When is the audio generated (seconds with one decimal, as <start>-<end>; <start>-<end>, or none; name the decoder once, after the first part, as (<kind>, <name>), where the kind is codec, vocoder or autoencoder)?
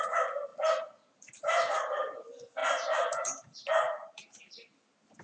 0.5-2.2 (vocoder, BigVGAN v2); 2.6-4.7